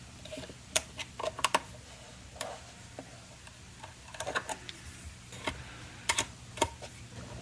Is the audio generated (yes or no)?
yes